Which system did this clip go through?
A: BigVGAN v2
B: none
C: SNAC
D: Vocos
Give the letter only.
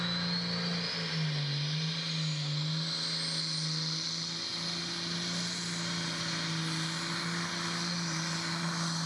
B